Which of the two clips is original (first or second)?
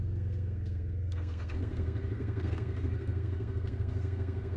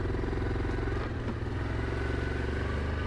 second